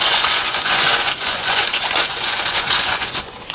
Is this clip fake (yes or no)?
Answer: yes